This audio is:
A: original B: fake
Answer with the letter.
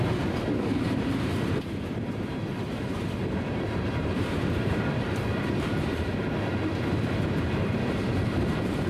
B